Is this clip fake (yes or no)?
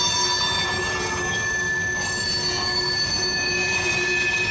no